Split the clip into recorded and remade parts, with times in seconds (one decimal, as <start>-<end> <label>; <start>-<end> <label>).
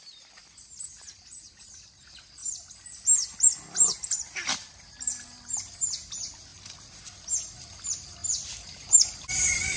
0.0-6.5 recorded; 6.5-7.0 remade; 7.0-8.2 recorded; 8.2-8.8 remade; 8.8-9.8 recorded